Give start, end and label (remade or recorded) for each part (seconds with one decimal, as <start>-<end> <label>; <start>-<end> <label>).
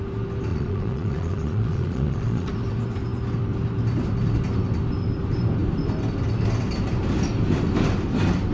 0.0-0.5 recorded; 0.5-2.5 remade; 2.5-8.5 recorded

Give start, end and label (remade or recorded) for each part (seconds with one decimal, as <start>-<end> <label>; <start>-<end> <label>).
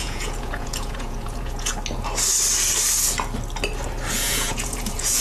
0.0-1.7 remade; 1.7-4.1 recorded; 4.1-5.2 remade